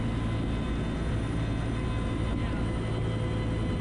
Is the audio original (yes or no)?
yes